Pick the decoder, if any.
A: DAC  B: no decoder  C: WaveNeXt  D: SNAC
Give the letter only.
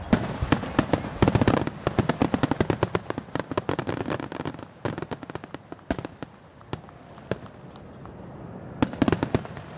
B